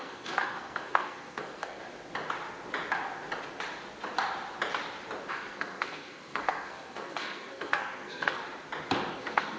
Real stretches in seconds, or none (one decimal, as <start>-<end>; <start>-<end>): 1.8-5.3; 8.4-9.1

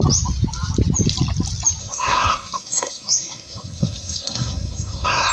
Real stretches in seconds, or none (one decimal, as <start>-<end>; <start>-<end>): 0.0-1.8

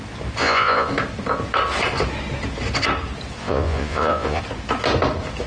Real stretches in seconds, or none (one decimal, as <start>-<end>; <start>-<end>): 0.0-0.4; 0.9-3.4; 4.4-5.5

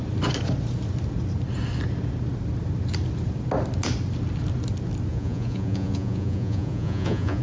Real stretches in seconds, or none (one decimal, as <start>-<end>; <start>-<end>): 0.0-5.1